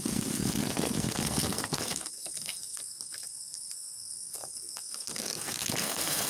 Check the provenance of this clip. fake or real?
fake